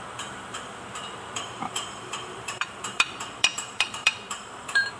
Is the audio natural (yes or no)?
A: no